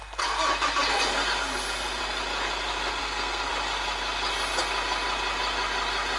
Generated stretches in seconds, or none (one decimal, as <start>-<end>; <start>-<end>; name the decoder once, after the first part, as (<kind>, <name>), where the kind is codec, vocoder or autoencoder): 3.0-3.5 (codec, SNAC)